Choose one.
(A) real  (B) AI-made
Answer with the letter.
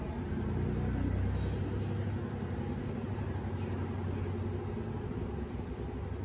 A